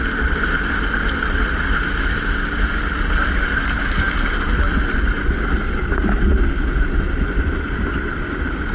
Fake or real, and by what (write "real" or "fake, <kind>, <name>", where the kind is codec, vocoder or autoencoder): real